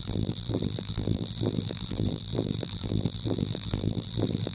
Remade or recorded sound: remade